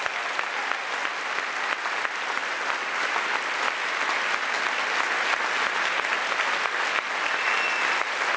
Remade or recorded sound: recorded